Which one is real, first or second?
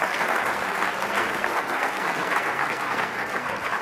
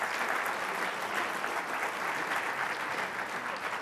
second